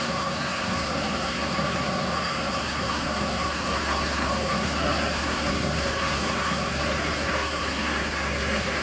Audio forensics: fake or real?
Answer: fake